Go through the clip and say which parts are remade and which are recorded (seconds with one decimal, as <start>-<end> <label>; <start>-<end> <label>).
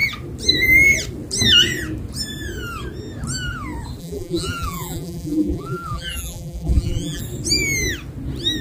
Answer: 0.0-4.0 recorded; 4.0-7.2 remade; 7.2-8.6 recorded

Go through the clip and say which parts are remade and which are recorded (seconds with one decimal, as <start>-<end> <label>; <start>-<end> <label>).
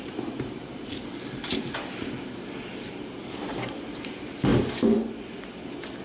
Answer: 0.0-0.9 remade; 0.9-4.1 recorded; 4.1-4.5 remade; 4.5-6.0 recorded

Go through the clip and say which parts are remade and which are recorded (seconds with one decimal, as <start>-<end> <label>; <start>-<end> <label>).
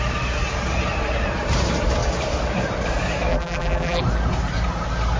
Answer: 0.0-3.3 recorded; 3.3-4.0 remade; 4.0-5.2 recorded